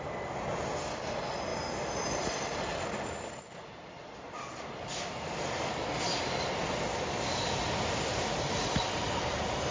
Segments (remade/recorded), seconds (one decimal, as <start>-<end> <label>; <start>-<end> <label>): 0.0-9.7 recorded